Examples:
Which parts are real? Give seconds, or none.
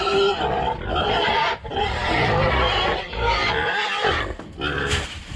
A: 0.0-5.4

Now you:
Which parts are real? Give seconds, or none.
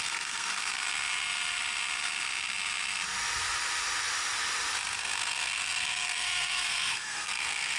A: 0.6-5.0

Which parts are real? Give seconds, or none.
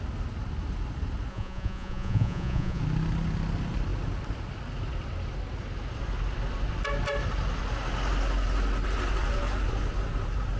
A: 0.0-1.3; 2.8-10.6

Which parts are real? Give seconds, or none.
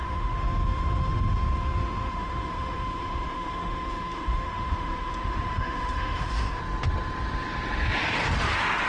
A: 6.6-8.9